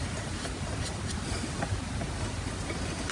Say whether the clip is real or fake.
real